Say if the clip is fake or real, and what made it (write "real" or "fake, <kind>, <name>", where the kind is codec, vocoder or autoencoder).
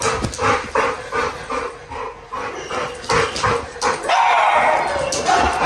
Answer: real